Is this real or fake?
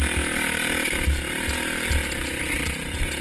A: real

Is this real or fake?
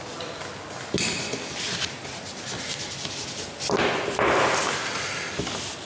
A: real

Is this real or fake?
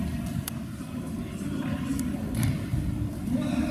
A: real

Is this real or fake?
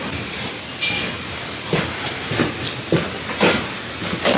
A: real